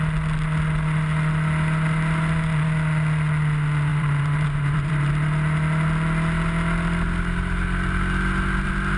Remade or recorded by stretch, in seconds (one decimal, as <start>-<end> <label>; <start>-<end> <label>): 0.0-3.9 recorded; 3.9-5.1 remade; 5.1-9.0 recorded